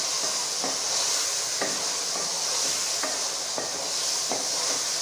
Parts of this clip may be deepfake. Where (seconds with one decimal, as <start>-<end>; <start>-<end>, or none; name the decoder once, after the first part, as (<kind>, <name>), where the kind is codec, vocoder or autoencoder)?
none

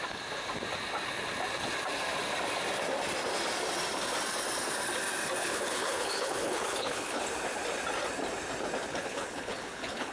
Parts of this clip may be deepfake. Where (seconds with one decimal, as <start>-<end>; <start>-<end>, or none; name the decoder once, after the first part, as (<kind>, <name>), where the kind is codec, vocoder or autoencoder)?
5.4-7.2 (codec, HILCodec); 8.9-10.1

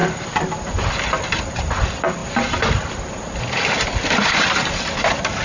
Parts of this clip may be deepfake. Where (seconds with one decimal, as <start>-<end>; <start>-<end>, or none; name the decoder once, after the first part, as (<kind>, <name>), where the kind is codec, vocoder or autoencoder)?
none

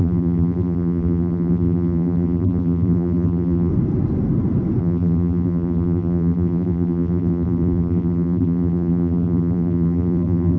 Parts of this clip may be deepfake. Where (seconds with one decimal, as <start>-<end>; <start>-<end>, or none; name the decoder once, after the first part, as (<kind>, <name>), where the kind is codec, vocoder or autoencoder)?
0.0-3.7 (vocoder, BigVGAN v2); 4.8-10.6

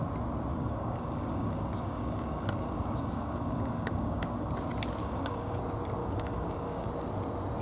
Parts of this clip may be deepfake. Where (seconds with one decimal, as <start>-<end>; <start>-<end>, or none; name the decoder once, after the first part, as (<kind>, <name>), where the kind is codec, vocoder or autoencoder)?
0.5-4.5 (codec, DAC); 5.0-5.6; 6.0-6.9

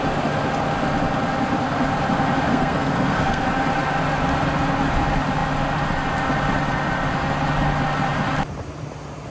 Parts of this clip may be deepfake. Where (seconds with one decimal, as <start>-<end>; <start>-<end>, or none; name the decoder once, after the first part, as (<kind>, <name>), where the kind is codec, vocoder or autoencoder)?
2.5-3.4 (codec, SNAC)

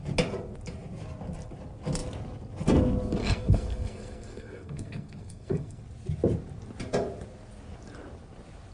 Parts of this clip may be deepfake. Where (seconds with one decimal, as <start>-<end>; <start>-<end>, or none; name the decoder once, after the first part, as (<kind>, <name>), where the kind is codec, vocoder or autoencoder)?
3.2-5.8 (codec, SNAC)